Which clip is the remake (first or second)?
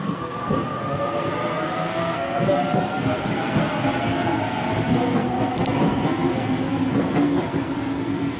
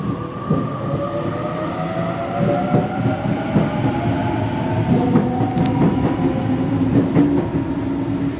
first